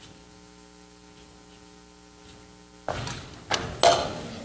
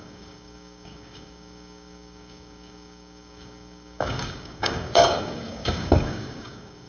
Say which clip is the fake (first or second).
second